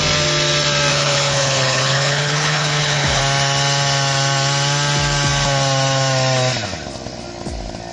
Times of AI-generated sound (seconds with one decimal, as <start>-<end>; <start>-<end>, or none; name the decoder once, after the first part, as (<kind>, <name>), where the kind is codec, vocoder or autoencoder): 0.9-3.2 (codec, HILCodec)